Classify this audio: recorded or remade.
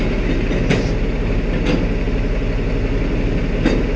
recorded